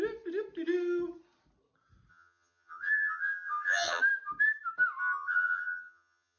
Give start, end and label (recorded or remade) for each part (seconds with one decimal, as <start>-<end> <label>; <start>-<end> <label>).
0.0-2.1 recorded; 2.1-4.0 remade; 4.0-5.0 recorded; 5.0-6.4 remade